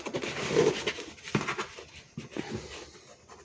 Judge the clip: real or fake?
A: real